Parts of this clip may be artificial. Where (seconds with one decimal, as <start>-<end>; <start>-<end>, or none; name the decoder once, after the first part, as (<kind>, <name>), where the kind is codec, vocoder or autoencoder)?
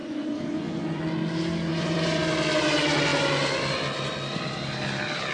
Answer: 0.0-1.0 (vocoder, Vocos); 1.7-2.2